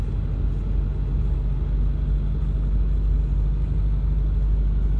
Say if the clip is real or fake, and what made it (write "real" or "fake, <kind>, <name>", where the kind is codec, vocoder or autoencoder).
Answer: real